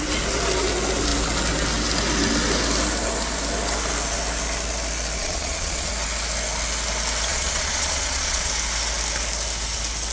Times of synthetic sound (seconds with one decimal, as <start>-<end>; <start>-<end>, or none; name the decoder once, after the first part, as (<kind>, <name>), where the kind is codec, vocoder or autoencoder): 5.2-5.9 (vocoder, Vocos); 7.3-8.5